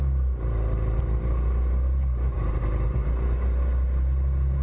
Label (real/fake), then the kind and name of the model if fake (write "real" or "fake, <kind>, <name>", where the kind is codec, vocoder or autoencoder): real